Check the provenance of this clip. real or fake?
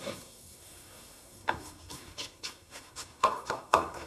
fake